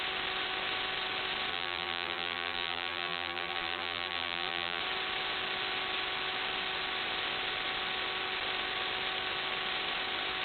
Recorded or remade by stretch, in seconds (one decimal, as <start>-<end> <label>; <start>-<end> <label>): 0.0-1.5 recorded; 1.5-4.8 remade; 4.8-10.4 recorded